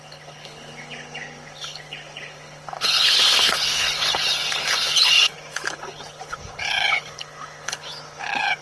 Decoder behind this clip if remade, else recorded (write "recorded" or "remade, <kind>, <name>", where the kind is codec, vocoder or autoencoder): remade, codec, HILCodec